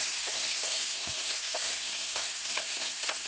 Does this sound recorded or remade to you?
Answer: remade